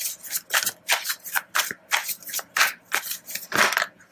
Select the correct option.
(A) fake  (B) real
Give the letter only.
B